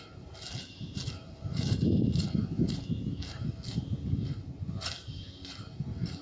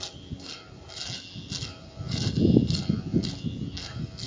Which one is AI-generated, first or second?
first